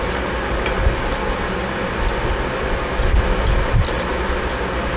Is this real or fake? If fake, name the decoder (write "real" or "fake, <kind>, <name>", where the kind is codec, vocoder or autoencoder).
real